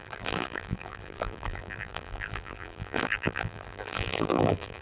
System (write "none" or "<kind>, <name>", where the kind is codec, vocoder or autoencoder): vocoder, BigVGAN v2